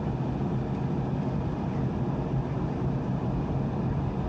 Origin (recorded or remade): recorded